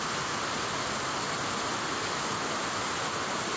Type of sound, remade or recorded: recorded